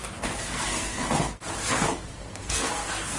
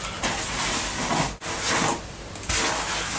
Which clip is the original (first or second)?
second